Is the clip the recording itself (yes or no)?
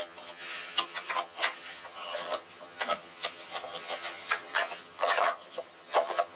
no